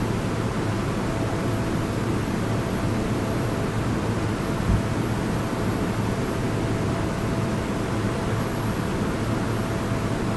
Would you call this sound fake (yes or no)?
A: no